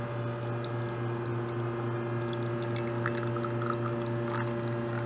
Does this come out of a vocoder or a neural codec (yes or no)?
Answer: no